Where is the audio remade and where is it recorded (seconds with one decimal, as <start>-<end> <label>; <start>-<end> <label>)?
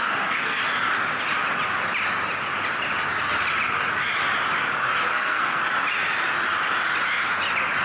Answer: 0.0-0.6 remade; 0.6-5.1 recorded; 5.1-5.6 remade; 5.6-7.8 recorded